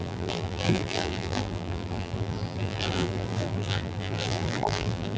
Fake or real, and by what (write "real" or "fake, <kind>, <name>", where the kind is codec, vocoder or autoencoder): fake, vocoder, BigVGAN v2